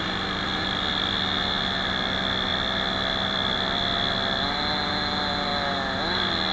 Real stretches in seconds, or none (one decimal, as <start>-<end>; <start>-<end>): 0.0-2.5; 4.1-6.5